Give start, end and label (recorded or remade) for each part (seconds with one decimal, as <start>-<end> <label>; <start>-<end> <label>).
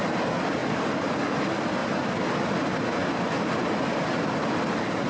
0.0-0.6 recorded; 0.6-1.2 remade; 1.2-1.8 recorded; 1.8-5.1 remade